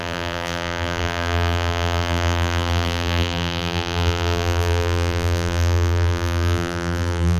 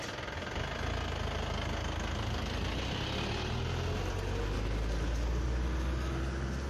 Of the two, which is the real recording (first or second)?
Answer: second